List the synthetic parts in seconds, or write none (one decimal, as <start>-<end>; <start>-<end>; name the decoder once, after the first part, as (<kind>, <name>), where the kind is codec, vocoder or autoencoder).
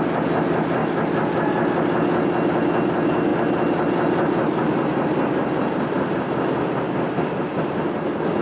none